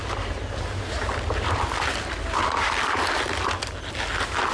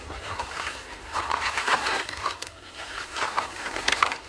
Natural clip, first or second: first